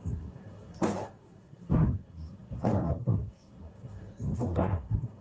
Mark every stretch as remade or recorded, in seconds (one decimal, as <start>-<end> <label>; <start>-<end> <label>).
0.0-5.2 remade